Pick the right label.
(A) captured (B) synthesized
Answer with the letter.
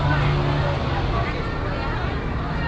A